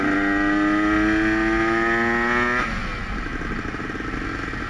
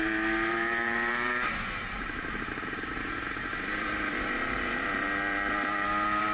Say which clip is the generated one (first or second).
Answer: second